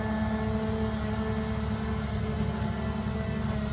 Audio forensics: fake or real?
real